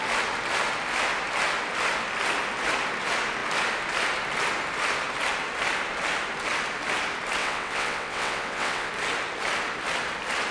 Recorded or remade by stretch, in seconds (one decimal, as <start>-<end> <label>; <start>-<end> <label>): 0.0-7.4 recorded; 7.4-8.9 remade; 8.9-10.5 recorded